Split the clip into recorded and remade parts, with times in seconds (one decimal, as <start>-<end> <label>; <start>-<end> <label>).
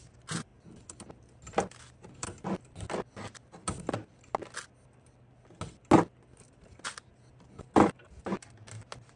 0.0-9.2 recorded